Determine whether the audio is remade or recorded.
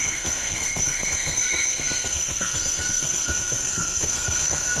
remade